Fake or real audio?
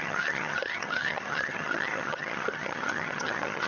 fake